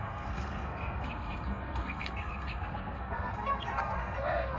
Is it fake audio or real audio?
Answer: fake